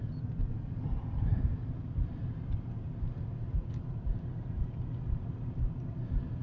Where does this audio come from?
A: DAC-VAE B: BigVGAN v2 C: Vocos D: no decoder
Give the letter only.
D